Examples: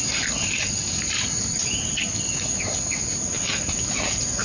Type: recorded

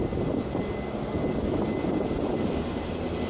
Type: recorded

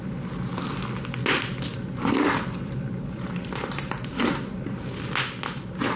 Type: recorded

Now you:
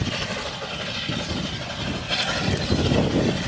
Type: recorded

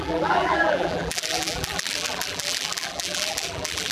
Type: remade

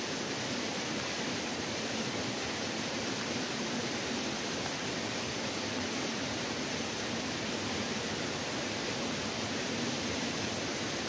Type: recorded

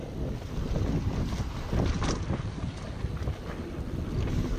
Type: recorded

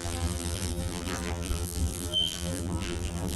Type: remade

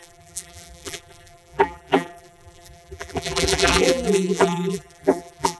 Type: remade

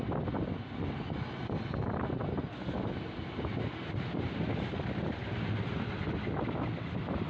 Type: recorded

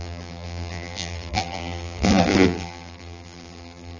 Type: remade